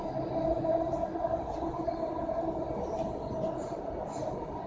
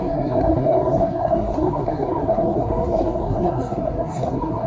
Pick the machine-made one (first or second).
second